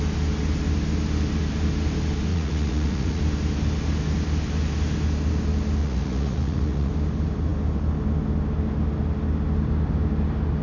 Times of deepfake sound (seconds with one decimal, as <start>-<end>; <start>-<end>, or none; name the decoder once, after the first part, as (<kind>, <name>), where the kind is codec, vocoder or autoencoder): 2.3-3.2 (vocoder, Vocos); 5.8-6.9